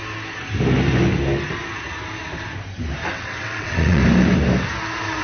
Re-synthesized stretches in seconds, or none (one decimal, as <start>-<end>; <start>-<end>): 3.1-4.0